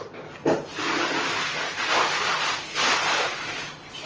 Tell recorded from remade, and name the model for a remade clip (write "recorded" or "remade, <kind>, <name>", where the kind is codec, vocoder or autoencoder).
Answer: recorded